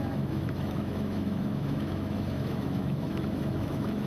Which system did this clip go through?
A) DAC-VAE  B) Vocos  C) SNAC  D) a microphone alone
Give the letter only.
A